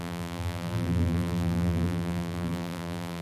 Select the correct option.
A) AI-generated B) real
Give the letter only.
A